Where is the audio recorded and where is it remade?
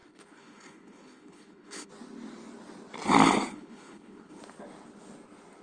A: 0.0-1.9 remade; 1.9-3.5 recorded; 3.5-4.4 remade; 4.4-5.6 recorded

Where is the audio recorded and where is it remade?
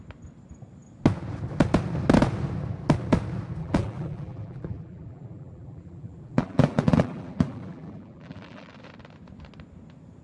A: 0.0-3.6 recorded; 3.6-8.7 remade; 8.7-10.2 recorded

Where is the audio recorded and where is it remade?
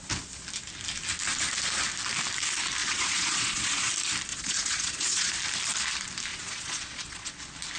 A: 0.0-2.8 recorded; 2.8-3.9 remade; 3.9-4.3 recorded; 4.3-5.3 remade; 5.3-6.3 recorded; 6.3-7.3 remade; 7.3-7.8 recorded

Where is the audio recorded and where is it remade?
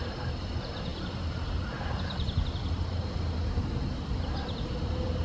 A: 0.0-5.2 remade